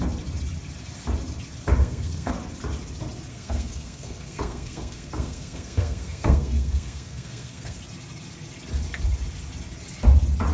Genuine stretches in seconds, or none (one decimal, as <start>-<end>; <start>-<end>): 0.0-1.8; 2.3-3.3; 7.8-10.5